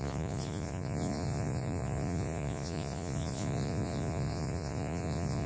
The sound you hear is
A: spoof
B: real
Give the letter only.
A